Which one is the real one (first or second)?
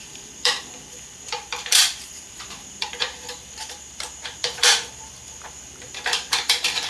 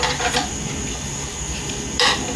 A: second